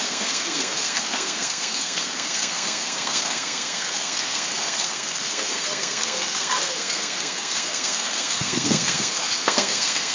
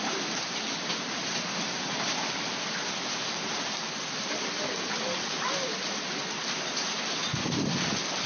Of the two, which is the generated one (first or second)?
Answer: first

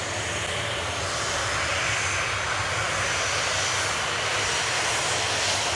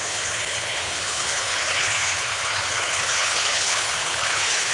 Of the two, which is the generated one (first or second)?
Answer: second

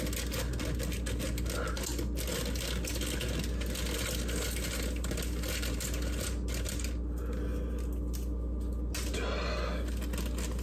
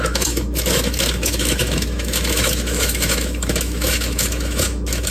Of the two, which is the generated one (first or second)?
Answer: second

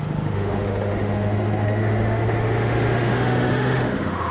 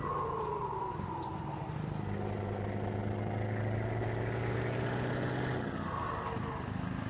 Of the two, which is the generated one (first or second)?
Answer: first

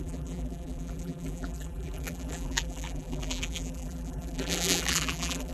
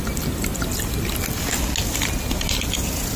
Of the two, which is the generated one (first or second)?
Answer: first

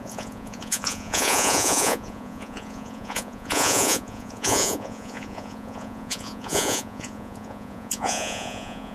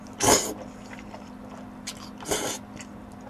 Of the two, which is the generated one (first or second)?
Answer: first